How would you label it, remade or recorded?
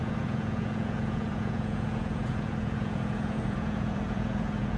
remade